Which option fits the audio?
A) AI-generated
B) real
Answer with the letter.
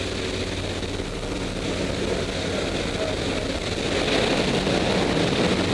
B